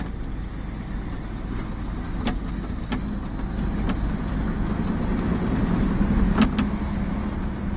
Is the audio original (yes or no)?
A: yes